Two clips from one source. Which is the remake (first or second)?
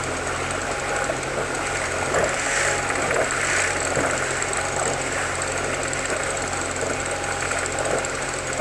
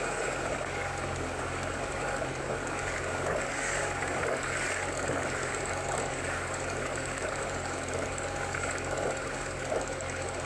second